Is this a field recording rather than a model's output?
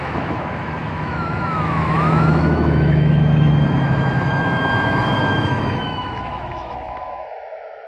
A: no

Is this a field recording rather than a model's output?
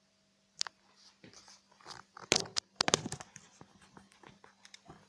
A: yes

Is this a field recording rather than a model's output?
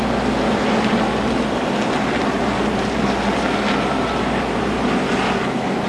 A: yes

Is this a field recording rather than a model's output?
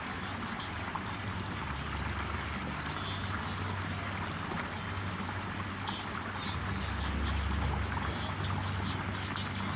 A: yes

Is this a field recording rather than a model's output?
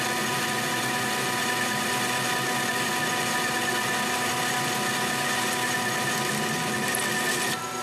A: yes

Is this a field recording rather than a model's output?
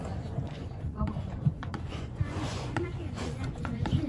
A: no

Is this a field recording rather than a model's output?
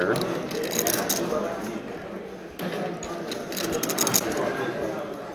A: yes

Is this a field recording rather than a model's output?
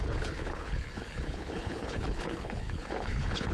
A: no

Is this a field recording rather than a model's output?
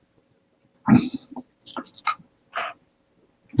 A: yes